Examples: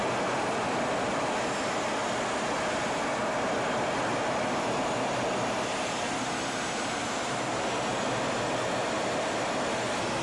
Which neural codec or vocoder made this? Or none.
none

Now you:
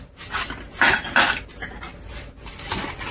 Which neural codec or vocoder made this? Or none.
none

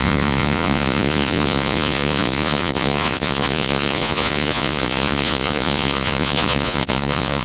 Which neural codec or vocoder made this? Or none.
vocoder, Vocos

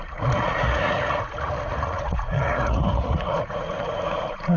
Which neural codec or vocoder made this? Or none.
vocoder, Vocos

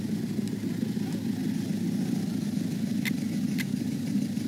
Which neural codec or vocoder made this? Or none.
none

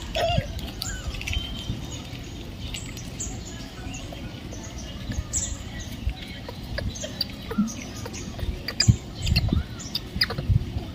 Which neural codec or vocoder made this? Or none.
vocoder, BigVGAN v2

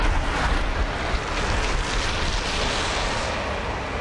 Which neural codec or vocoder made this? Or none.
none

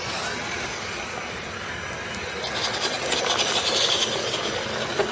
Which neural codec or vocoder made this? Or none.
none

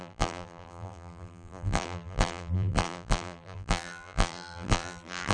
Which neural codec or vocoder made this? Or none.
vocoder, BigVGAN v2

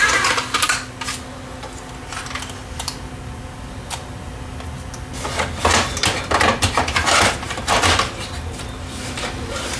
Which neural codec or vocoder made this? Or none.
none